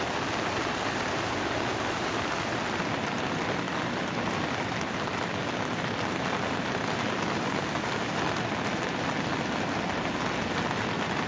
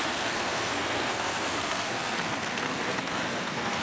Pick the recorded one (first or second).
first